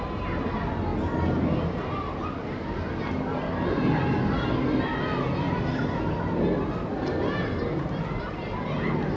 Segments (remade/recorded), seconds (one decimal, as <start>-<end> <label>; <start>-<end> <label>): 0.0-9.2 recorded